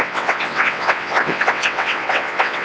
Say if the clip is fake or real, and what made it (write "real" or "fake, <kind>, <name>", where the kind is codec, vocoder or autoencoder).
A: fake, vocoder, WaveNeXt